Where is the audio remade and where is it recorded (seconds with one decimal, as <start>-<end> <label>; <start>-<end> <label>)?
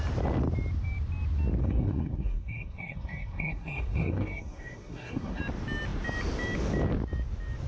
0.0-1.6 recorded; 1.6-5.4 remade; 5.4-7.7 recorded